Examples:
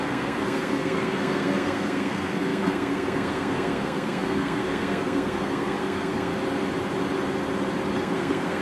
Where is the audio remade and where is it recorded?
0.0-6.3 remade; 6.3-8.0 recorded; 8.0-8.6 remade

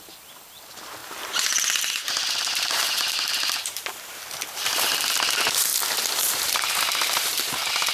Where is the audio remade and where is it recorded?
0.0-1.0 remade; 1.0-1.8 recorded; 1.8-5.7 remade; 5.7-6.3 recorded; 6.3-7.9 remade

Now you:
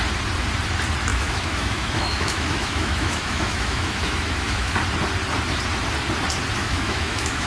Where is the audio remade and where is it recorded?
0.0-1.1 recorded; 1.1-4.7 remade; 4.7-6.6 recorded; 6.6-7.5 remade